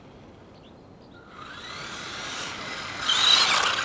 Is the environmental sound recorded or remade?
recorded